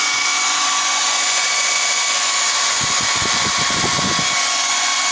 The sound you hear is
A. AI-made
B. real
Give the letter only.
A